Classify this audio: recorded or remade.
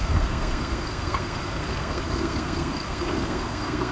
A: remade